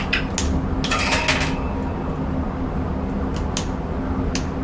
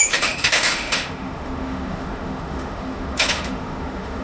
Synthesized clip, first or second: second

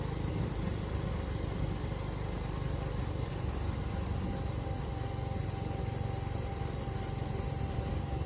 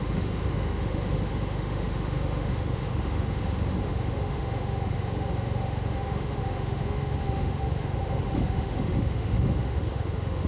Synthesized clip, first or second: second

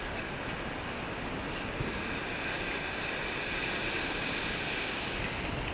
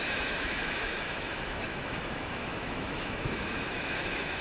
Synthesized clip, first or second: second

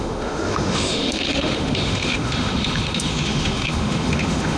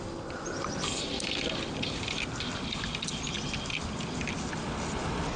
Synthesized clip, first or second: first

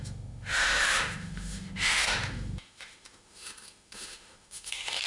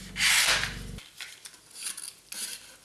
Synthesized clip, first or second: first